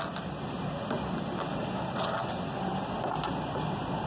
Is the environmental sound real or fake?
real